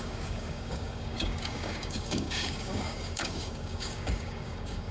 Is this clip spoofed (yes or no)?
yes